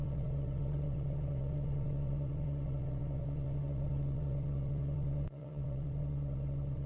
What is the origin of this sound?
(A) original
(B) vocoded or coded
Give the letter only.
B